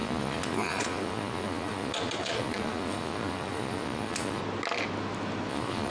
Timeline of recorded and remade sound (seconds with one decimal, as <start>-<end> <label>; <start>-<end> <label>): 0.0-4.4 remade; 4.4-5.5 recorded; 5.5-5.9 remade